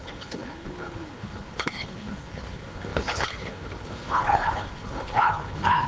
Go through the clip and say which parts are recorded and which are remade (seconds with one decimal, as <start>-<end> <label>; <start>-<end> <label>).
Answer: 0.0-5.9 remade